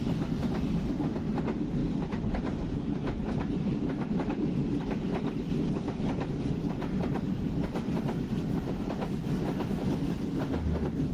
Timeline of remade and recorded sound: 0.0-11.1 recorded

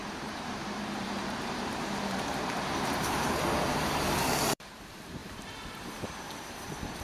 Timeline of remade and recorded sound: 0.0-5.2 remade; 5.2-6.4 recorded; 6.4-7.0 remade

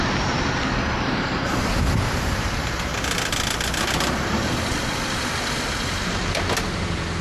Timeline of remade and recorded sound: 0.0-2.9 remade; 2.9-6.6 recorded; 6.6-7.2 remade

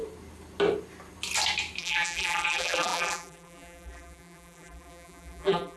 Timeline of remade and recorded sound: 0.0-1.8 recorded; 1.8-5.8 remade

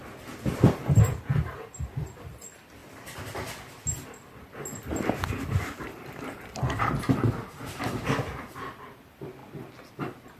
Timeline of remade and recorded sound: 0.0-2.3 remade; 2.3-10.4 recorded